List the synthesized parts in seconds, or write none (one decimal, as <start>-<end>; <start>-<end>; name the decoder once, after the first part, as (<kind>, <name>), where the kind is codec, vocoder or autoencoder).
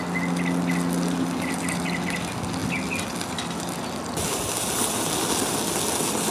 none